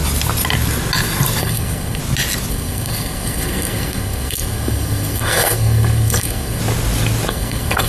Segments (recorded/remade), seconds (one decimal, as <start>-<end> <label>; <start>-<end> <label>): 0.0-1.4 recorded; 1.4-2.0 remade; 2.0-2.5 recorded; 2.5-6.6 remade; 6.6-7.3 recorded; 7.3-7.9 remade